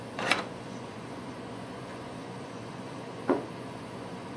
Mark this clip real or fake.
fake